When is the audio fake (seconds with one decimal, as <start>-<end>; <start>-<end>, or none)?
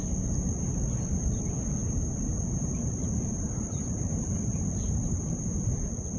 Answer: 1.8-5.5